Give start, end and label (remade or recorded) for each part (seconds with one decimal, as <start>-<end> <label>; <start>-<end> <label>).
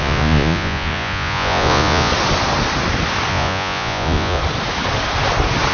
0.0-2.1 remade; 2.1-3.3 recorded; 3.3-4.4 remade; 4.4-5.7 recorded